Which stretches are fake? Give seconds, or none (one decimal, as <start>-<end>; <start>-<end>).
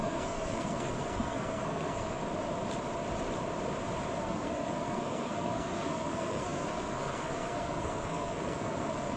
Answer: 0.0-2.2; 4.2-9.2